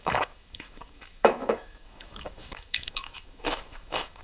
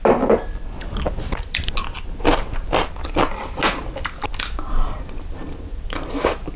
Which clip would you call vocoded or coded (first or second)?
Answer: first